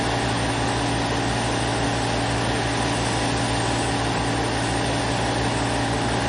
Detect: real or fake real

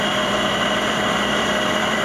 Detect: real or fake fake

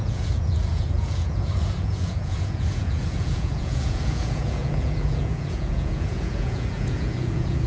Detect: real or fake fake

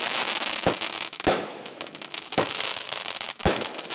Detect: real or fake fake